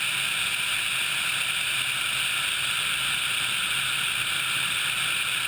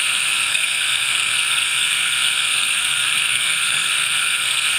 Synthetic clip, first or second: second